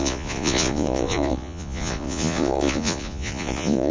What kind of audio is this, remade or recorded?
remade